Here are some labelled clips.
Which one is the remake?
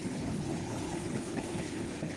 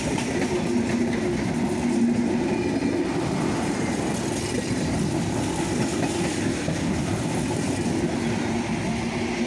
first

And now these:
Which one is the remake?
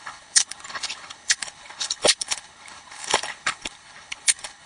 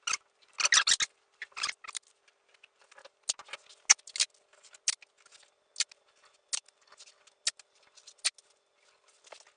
first